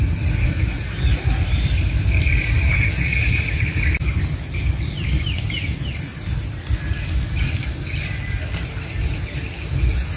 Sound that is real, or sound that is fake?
real